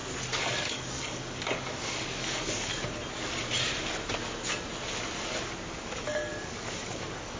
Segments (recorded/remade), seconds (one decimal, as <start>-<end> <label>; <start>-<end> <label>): 0.0-0.6 recorded; 0.6-2.7 remade; 2.7-5.8 recorded; 5.8-7.4 remade